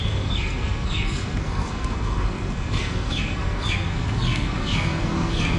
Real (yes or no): no